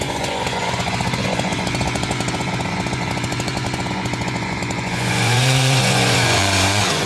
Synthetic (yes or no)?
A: yes